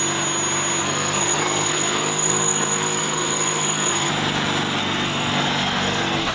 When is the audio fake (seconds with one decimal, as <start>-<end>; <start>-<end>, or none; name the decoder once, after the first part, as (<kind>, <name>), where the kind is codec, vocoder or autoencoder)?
0.8-4.1 (codec, SNAC); 4.8-6.3